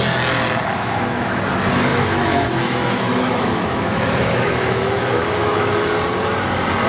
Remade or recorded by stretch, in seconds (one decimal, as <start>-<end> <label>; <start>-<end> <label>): 0.0-0.7 recorded; 0.7-1.4 remade; 1.4-1.9 recorded; 1.9-5.9 remade; 5.9-6.9 recorded

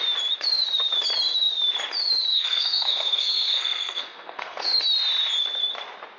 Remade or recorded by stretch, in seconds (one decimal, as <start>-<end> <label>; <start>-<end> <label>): 0.0-2.3 recorded; 2.3-4.8 remade; 4.8-6.2 recorded